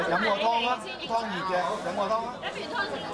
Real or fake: real